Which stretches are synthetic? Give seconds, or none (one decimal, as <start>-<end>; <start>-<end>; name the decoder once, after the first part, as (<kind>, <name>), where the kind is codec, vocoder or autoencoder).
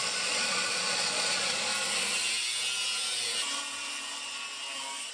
0.0-1.7 (vocoder, Vocos)